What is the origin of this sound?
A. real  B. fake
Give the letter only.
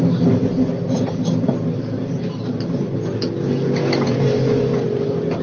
A